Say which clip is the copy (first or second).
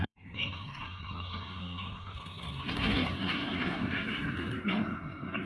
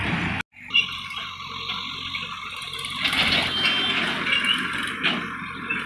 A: first